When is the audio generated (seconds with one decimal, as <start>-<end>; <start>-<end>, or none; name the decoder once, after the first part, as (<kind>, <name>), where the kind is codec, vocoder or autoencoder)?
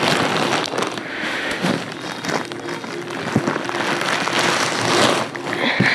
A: 1.1-1.7 (autoencoder, DAC-VAE)